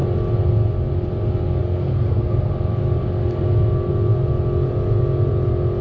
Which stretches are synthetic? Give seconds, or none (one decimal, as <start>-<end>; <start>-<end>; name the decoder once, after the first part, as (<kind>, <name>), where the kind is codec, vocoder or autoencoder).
1.6-2.5 (codec, SNAC)